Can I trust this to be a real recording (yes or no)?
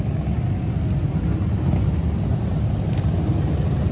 yes